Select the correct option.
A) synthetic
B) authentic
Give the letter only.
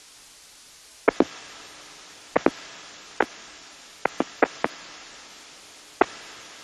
B